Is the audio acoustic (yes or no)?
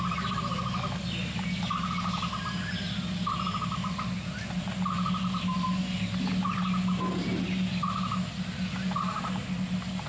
yes